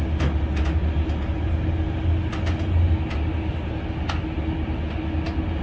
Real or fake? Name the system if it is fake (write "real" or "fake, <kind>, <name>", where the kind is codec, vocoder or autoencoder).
real